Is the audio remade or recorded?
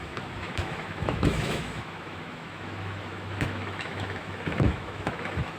remade